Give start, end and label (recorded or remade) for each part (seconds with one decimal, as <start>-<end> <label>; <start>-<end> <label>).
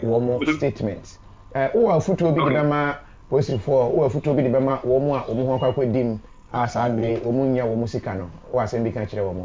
0.0-0.6 remade; 0.6-6.3 recorded; 6.3-7.1 remade; 7.1-9.4 recorded